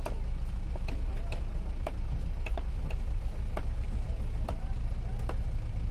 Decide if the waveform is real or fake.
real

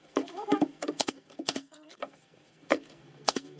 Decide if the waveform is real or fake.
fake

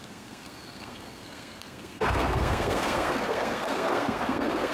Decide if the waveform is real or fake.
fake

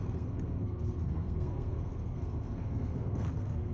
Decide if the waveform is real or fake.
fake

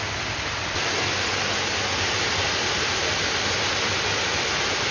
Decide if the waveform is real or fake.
real